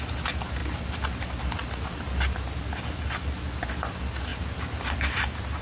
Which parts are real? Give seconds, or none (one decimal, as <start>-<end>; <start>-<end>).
0.0-5.6